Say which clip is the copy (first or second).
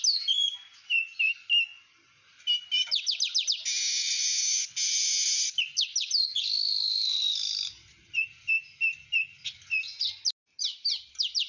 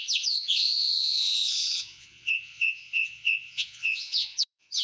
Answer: second